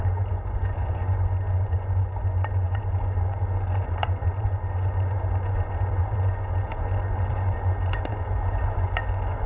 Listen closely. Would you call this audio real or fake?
fake